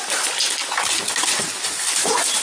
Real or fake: real